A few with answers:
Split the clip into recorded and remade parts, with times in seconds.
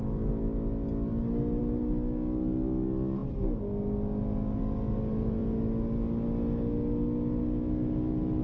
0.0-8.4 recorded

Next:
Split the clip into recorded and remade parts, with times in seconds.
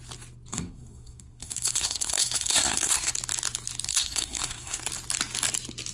0.0-0.5 recorded; 0.5-3.1 remade; 3.1-3.9 recorded; 3.9-4.8 remade; 4.8-5.9 recorded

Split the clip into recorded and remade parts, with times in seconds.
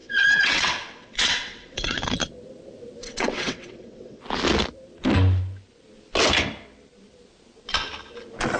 0.0-2.2 remade; 2.2-3.0 recorded; 3.0-4.2 remade; 4.2-8.6 recorded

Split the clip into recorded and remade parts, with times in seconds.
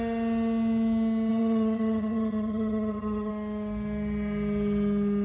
0.0-1.3 recorded; 1.3-3.3 remade; 3.3-5.2 recorded